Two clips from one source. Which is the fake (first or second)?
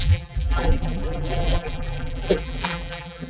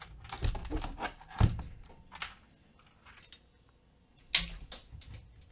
first